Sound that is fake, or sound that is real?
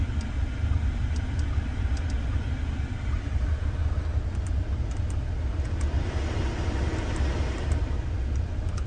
real